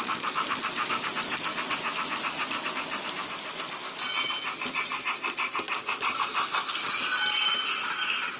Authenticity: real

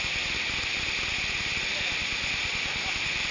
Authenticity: real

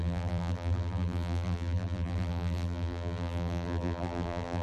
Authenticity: fake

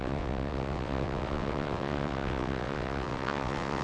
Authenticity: fake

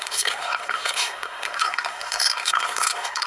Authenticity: fake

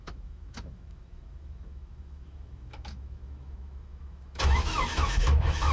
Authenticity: fake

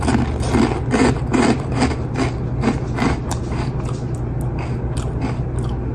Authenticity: real